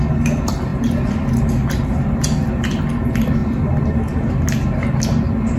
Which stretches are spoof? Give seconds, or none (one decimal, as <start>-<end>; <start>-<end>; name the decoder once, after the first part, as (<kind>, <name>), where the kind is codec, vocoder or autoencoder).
none